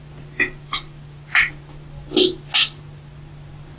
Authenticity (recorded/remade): recorded